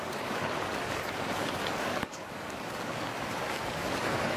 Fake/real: fake